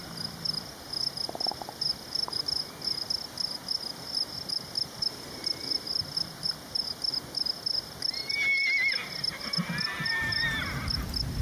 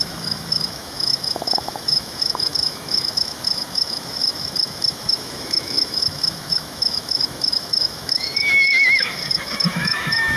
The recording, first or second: first